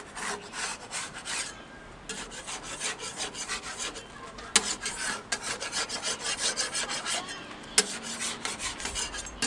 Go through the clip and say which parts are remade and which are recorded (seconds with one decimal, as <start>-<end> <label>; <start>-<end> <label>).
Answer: 0.0-0.7 recorded; 0.7-1.8 remade; 1.8-9.5 recorded